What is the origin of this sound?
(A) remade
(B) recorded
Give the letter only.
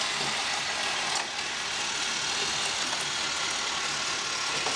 B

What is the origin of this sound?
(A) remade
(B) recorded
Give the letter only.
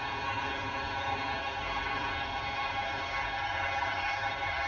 A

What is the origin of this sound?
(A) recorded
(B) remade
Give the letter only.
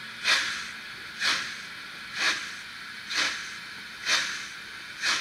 A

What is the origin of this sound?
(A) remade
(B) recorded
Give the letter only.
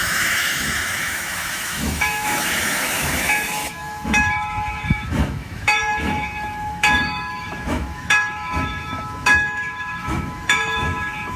A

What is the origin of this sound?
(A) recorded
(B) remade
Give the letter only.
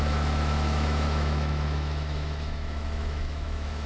B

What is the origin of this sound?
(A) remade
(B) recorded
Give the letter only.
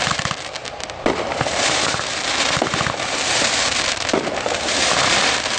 A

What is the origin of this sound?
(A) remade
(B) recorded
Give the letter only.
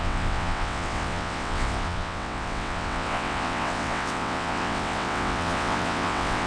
A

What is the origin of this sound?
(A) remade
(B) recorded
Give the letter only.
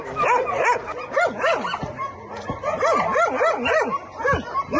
B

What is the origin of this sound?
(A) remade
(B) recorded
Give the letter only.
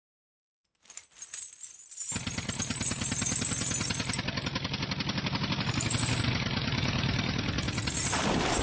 B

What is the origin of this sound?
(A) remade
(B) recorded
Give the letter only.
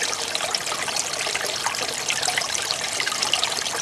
B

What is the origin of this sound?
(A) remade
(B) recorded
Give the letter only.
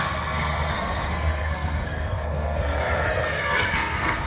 A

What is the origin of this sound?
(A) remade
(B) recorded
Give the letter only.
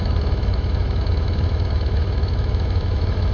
A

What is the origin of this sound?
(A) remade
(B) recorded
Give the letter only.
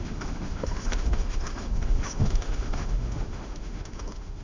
A